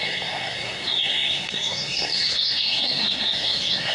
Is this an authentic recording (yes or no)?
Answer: no